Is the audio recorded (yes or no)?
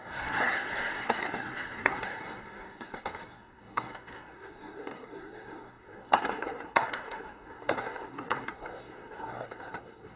no